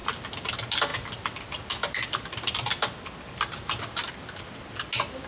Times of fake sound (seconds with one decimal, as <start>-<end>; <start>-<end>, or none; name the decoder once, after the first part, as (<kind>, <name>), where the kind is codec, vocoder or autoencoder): none